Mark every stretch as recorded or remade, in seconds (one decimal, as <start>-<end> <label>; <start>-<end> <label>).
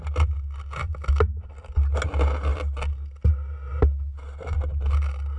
0.0-5.4 recorded